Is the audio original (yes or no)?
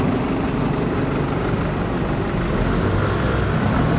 yes